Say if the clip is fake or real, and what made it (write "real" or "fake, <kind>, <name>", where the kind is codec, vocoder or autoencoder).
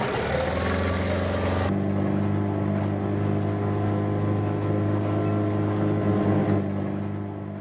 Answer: real